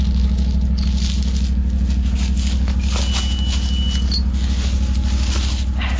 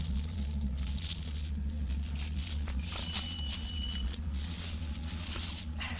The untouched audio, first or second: first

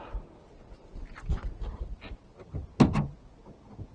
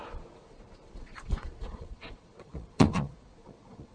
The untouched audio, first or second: first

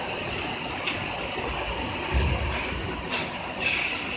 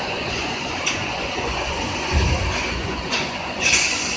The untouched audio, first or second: first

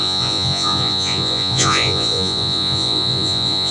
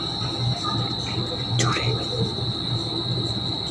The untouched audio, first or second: second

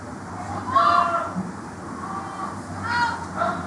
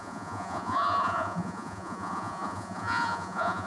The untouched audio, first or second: first